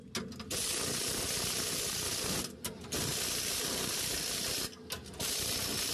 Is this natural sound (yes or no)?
yes